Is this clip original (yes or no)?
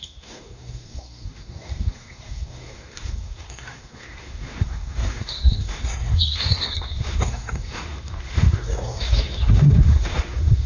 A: no